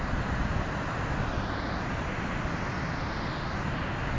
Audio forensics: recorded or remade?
recorded